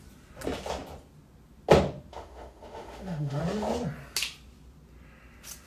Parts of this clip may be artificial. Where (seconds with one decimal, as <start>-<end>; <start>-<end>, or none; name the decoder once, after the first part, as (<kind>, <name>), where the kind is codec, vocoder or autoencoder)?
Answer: 2.1-3.4 (autoencoder, DAC-VAE)